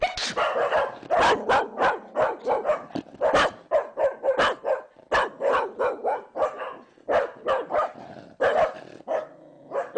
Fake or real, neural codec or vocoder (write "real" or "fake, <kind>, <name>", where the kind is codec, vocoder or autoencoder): real